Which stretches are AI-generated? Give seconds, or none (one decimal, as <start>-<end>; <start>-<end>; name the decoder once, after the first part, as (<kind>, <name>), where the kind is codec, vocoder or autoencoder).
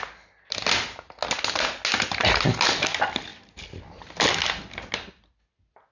none